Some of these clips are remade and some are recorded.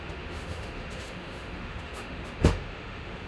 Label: remade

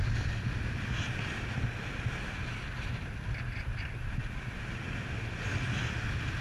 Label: recorded